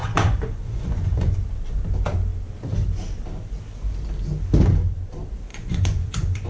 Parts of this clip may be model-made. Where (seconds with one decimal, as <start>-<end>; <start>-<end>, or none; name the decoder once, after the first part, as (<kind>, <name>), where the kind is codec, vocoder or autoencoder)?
0.0-1.4 (vocoder, Vocos); 5.5-6.5